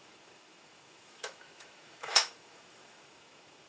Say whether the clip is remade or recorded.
remade